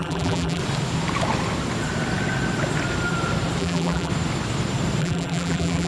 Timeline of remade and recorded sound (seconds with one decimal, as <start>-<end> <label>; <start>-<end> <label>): 0.0-0.6 remade; 0.6-3.6 recorded; 3.6-4.1 remade; 4.1-5.0 recorded; 5.0-5.9 remade